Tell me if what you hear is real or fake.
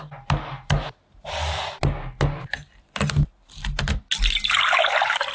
real